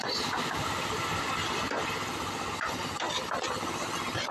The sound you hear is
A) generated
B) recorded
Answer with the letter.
B